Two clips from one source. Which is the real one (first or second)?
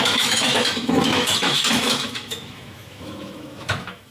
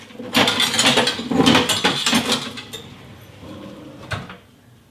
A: second